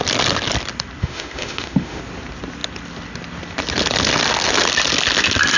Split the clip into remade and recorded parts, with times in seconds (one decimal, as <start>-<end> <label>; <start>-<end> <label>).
0.0-1.0 recorded; 1.0-2.0 remade; 2.0-5.6 recorded